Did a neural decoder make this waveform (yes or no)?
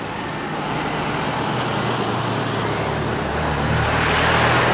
no